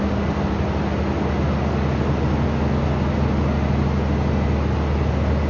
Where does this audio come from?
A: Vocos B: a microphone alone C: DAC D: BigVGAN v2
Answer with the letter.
B